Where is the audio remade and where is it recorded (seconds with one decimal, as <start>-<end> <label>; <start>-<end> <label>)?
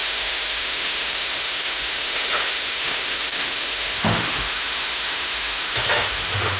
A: 0.0-6.6 remade